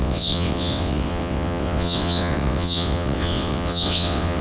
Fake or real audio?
fake